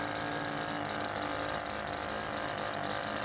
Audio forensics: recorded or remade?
recorded